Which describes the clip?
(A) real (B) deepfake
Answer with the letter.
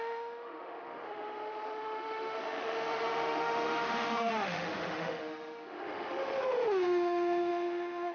B